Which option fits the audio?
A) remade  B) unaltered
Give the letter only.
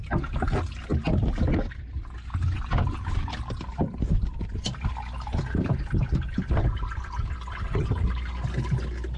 B